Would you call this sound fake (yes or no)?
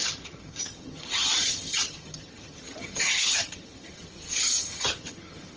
yes